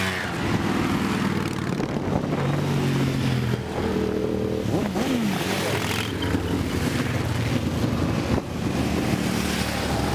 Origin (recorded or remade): recorded